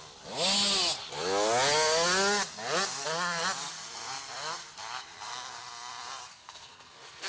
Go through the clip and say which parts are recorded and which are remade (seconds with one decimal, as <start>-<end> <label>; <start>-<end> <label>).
0.0-6.3 recorded; 6.3-7.3 remade